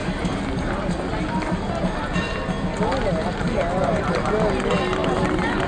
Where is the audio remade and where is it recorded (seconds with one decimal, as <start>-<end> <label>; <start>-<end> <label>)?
0.0-5.7 recorded